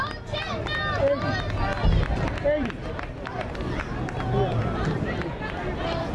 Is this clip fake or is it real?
real